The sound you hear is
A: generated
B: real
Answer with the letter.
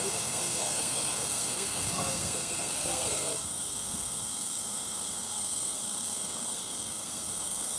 A